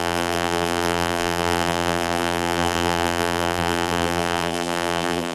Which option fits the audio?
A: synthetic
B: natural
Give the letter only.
A